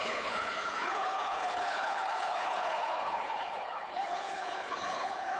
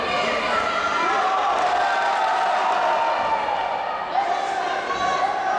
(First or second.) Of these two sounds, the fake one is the first